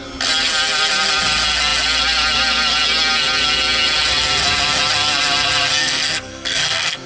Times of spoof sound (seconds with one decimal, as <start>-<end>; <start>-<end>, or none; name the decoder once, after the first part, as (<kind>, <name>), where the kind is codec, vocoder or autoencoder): 5.8-7.1 (codec, SNAC)